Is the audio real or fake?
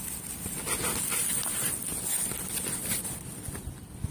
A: real